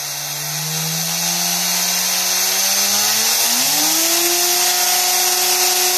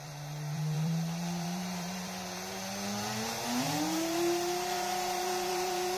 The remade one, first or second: second